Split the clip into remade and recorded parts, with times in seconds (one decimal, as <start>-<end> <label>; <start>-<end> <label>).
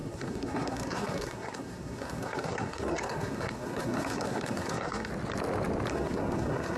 0.0-5.1 remade; 5.1-5.9 recorded; 5.9-6.8 remade